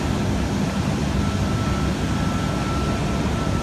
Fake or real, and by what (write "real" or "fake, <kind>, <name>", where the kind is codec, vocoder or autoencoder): real